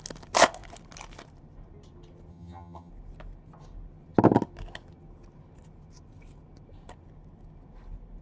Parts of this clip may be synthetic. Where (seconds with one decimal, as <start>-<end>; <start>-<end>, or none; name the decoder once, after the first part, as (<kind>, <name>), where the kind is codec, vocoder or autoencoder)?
2.3-2.9 (vocoder, HiFi-GAN)